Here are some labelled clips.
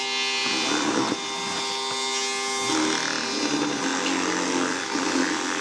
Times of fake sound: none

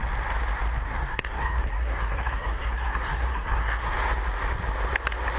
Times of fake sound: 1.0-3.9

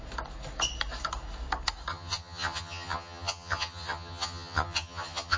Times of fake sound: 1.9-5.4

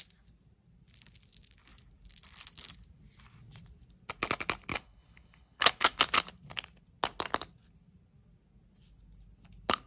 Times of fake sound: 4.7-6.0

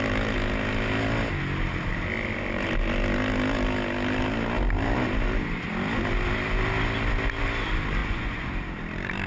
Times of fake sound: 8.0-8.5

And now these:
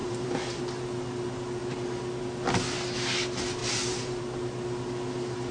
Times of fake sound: 0.0-0.6; 3.6-4.2

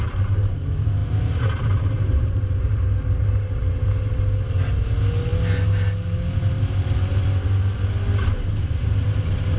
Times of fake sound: 1.0-2.5